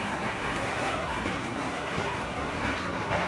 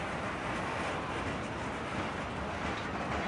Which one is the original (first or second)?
second